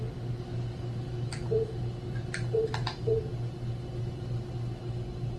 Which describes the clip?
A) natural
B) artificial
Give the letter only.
A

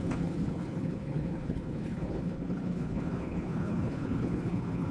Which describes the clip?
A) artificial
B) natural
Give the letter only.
A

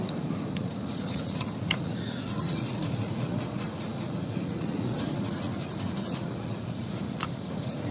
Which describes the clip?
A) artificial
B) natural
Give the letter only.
A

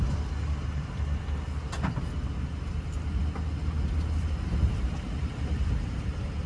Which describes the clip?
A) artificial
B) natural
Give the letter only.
B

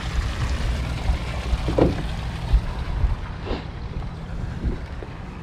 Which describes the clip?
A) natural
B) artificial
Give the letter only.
B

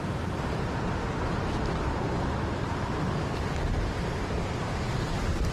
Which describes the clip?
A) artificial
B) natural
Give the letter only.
B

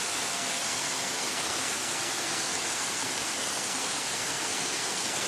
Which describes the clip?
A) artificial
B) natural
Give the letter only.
A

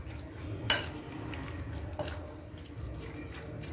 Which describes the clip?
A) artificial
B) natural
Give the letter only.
B